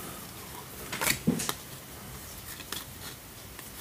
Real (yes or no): yes